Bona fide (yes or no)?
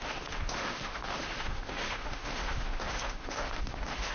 no